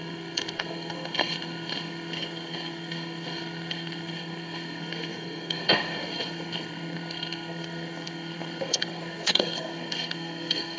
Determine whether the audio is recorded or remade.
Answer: remade